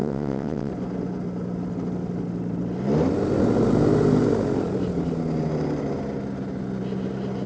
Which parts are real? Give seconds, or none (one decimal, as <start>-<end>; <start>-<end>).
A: 0.7-7.5